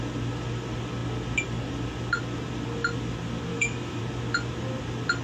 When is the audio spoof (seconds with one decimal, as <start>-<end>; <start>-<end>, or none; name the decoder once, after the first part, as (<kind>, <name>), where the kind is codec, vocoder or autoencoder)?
3.5-4.0 (autoencoder, DAC-VAE)